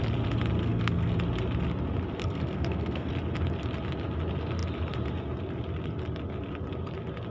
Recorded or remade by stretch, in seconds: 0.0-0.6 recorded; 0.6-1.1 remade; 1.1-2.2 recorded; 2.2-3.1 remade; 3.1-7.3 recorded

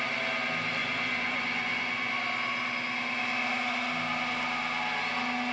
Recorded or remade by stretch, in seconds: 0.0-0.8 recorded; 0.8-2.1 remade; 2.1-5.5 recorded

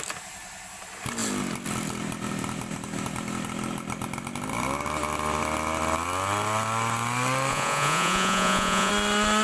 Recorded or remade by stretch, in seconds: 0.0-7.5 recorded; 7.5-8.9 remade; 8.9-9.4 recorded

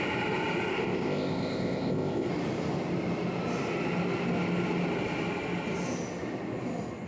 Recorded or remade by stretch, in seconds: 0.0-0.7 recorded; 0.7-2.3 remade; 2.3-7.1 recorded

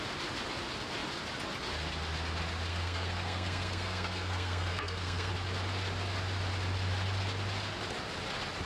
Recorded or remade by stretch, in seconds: 0.0-2.7 recorded; 2.7-5.3 remade; 5.3-8.7 recorded

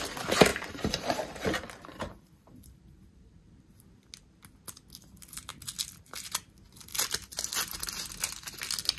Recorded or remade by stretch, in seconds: 0.0-0.5 recorded; 0.5-3.8 remade; 3.8-9.0 recorded

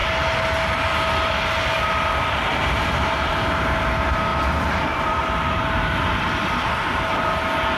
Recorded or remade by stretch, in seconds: 0.0-4.3 recorded; 4.3-6.7 remade; 6.7-7.8 recorded